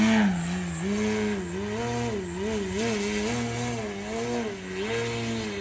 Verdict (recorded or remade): recorded